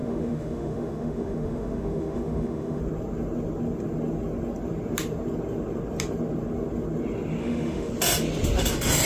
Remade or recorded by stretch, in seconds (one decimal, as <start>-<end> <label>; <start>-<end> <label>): 0.0-2.8 remade; 2.8-7.4 recorded; 7.4-7.9 remade; 7.9-9.1 recorded